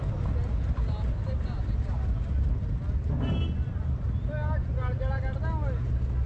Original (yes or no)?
yes